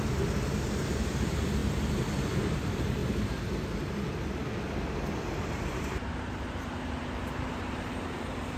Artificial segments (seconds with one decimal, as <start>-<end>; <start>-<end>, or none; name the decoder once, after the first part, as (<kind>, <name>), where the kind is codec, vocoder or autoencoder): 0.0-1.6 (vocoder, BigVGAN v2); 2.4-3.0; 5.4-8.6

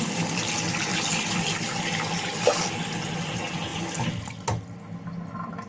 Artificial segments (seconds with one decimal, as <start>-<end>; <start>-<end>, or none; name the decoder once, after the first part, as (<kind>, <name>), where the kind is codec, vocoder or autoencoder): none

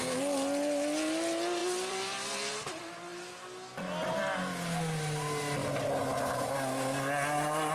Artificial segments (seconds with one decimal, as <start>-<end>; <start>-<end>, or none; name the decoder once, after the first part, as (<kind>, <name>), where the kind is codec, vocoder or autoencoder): 1.6-2.5 (vocoder, BigVGAN v2)

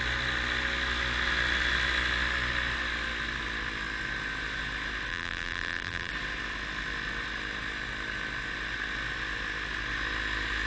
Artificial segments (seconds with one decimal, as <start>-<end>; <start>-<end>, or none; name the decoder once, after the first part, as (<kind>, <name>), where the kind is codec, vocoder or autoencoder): 5.1-6.1 (vocoder, BigVGAN v2)

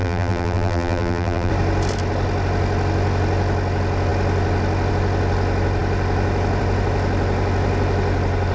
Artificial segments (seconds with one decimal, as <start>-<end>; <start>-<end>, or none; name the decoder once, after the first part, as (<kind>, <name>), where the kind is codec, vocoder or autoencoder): 0.0-1.5 (vocoder, BigVGAN v2)

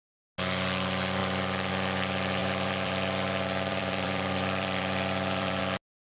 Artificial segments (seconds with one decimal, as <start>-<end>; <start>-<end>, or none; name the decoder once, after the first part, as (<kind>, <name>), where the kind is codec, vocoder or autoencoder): 1.2-1.7 (vocoder, BigVGAN v2); 2.4-5.6